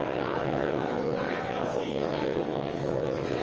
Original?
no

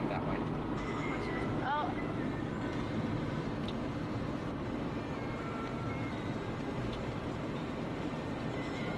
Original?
yes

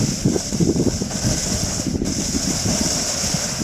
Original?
yes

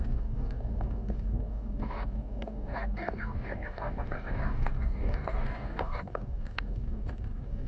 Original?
no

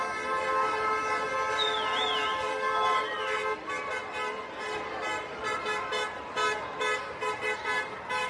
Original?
yes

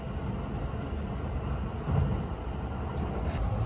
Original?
yes